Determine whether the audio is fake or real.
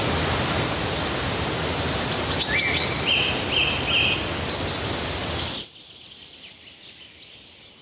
real